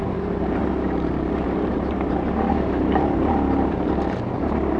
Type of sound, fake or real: fake